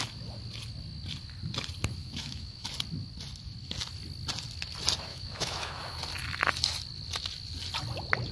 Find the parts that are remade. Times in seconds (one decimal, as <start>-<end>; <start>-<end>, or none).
2.0-2.7; 5.1-6.0